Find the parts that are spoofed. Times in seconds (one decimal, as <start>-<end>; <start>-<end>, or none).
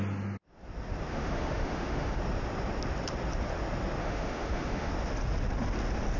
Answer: 1.1-2.2; 4.0-4.9